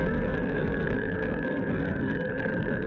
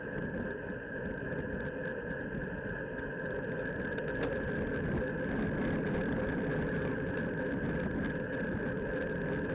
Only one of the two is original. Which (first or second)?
second